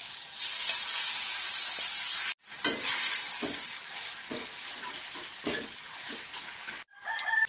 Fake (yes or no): no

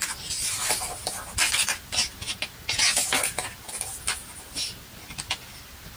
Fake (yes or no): no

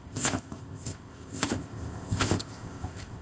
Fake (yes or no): yes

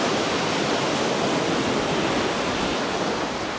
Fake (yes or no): no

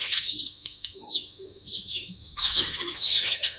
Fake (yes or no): yes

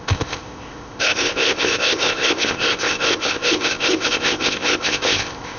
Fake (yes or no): yes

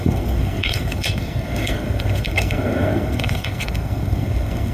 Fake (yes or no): yes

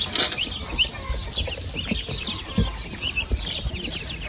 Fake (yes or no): no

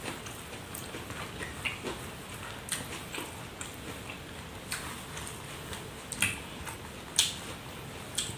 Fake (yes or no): no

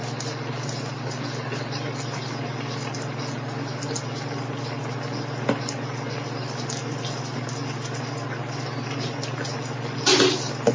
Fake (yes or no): no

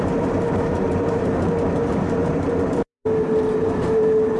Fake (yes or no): yes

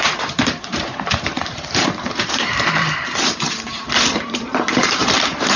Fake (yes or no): yes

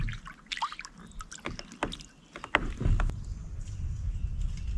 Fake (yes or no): no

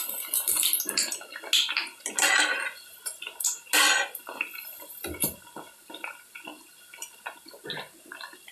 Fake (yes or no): no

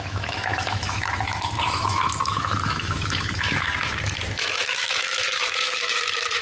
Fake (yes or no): yes